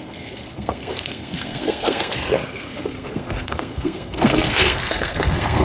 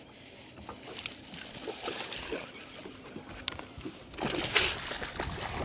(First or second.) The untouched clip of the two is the second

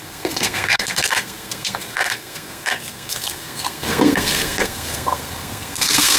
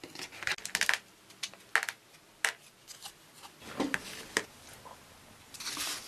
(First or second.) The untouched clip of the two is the second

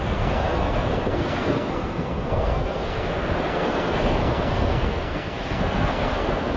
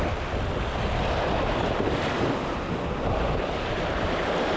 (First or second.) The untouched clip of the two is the second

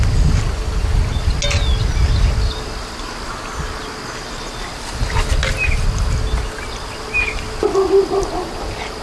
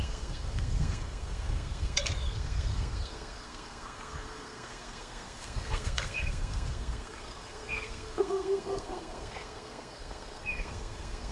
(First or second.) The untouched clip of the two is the first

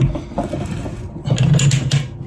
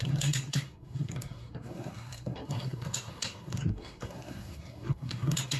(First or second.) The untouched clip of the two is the first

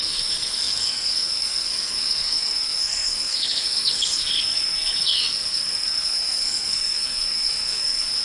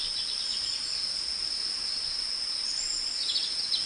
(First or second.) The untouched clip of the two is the second